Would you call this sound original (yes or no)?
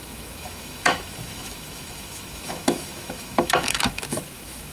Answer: no